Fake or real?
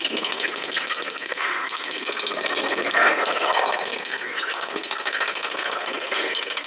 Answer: fake